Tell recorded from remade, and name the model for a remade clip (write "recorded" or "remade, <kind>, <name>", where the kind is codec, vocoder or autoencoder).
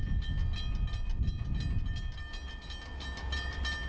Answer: recorded